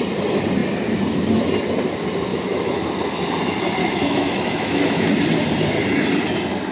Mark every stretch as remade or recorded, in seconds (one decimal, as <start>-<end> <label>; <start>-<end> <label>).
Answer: 0.0-2.3 recorded; 2.3-2.9 remade; 2.9-3.8 recorded; 3.8-5.1 remade; 5.1-6.7 recorded